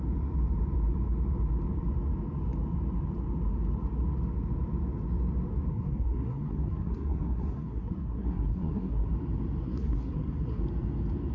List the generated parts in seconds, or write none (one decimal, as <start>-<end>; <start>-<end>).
5.7-9.1; 9.6-10.6

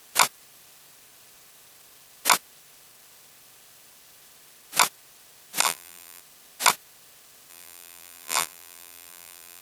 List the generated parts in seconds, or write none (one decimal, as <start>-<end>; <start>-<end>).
5.6-6.2; 7.5-9.6

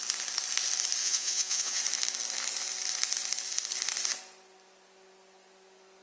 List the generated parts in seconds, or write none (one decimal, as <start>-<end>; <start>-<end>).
1.0-1.8

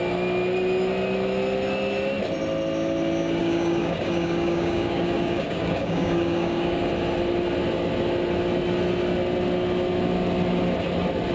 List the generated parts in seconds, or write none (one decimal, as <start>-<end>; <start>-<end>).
3.4-6.9